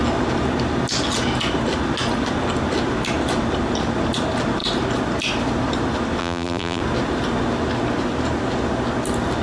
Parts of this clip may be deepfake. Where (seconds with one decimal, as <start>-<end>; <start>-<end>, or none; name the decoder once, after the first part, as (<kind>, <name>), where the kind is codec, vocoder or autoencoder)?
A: 6.2-6.8 (vocoder, BigVGAN v2)